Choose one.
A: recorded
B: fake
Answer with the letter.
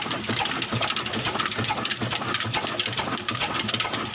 A